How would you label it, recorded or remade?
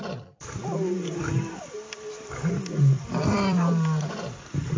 remade